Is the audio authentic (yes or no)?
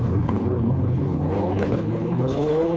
no